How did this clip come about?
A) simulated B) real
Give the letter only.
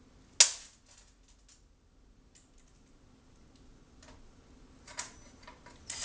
B